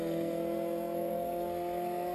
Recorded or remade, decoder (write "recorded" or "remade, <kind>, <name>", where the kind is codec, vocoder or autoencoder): remade, codec, SNAC